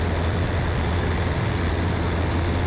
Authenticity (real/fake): real